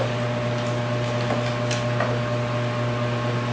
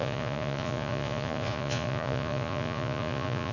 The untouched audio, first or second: first